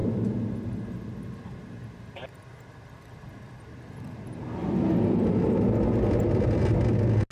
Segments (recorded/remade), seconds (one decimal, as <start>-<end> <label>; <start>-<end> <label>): 0.0-7.3 recorded